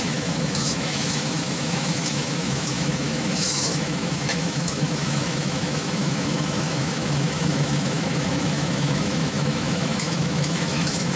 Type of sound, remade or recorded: remade